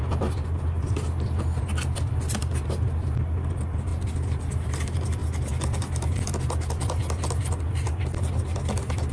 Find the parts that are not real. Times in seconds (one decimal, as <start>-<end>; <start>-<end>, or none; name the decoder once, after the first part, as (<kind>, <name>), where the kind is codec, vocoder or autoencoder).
none